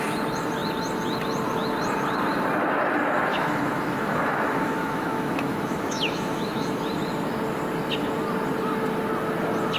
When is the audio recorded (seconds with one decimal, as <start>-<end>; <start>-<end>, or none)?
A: 0.0-3.3; 6.7-9.8